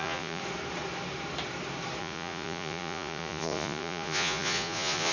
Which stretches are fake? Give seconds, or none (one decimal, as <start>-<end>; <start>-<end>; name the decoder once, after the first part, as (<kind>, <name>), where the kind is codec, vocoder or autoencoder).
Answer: 0.0-0.4 (vocoder, Vocos); 2.0-5.1